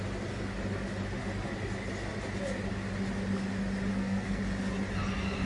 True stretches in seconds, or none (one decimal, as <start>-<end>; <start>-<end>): 0.0-3.9; 4.4-5.5